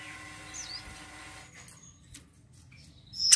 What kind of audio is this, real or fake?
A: real